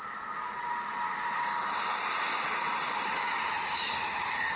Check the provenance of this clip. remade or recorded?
recorded